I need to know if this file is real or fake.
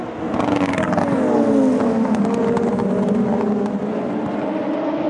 real